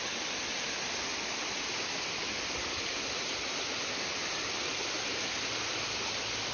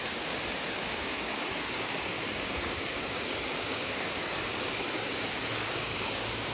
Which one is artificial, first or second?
second